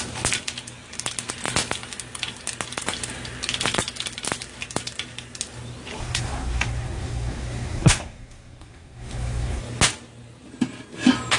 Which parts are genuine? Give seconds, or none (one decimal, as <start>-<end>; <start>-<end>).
0.0-6.0; 9.6-11.4

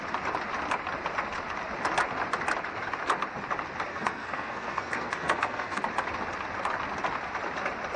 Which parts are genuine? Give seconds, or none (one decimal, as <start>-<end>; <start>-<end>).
0.0-3.9; 5.8-8.0

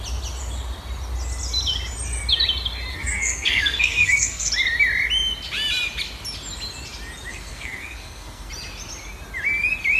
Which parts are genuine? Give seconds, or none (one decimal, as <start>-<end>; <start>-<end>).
0.0-2.9; 4.5-7.3; 8.5-10.0